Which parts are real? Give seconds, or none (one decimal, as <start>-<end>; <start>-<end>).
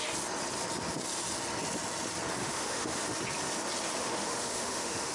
0.0-2.4; 3.0-4.0